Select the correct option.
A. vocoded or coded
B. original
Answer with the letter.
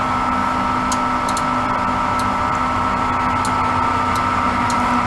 B